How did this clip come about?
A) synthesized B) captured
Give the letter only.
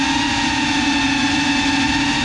B